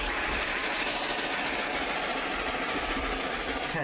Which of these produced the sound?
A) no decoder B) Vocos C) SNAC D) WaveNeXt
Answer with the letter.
A